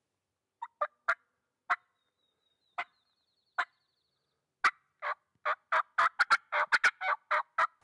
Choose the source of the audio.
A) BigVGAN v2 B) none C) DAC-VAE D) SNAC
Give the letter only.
B